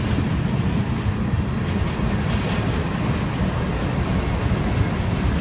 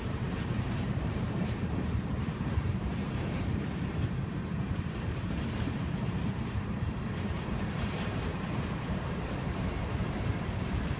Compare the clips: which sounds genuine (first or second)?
first